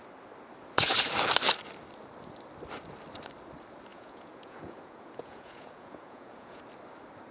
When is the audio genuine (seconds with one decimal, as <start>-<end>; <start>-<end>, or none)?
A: 0.0-3.9; 6.6-7.3

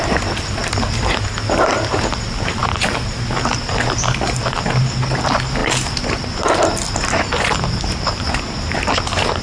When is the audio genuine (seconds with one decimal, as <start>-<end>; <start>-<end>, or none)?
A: 0.0-9.4

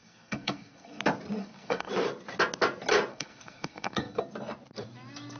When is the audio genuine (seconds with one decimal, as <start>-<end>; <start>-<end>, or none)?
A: 1.0-1.4; 1.9-3.1; 4.2-5.4

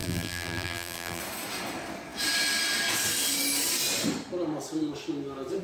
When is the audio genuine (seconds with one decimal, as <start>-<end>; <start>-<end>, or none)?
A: 1.2-5.6

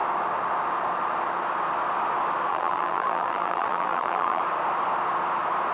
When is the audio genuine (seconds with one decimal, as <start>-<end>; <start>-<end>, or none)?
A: 0.0-2.5; 4.4-5.7

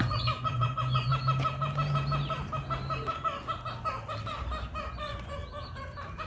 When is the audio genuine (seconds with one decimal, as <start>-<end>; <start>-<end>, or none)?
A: 1.1-4.9; 5.4-6.3

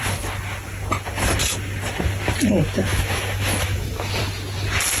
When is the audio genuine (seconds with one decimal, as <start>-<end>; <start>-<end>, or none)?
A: 0.0-2.9; 4.2-5.0

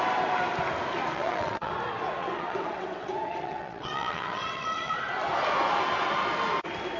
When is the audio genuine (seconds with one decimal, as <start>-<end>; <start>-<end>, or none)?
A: 0.0-1.1; 1.7-2.2; 4.9-7.0